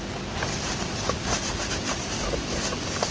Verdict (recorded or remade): recorded